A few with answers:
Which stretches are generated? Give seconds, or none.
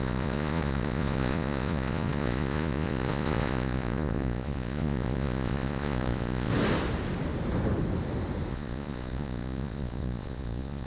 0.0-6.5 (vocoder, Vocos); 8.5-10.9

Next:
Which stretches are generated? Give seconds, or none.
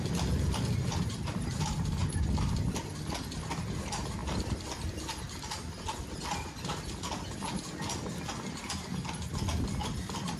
none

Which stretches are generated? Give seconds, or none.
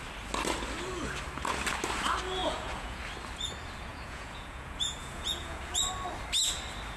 2.4-3.0 (vocoder, Vocos); 3.9-5.6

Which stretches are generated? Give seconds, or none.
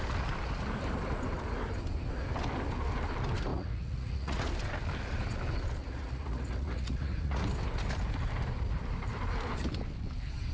3.5-4.5 (vocoder, Vocos); 5.8-7.4